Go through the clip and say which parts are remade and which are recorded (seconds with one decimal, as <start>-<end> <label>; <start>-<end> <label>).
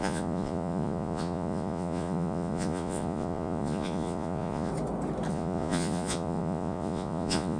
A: 0.0-4.7 remade; 4.7-5.3 recorded; 5.3-7.6 remade